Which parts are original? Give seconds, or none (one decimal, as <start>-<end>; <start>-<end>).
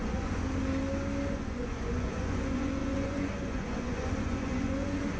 0.4-1.3